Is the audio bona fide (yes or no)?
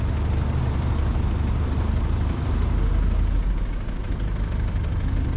yes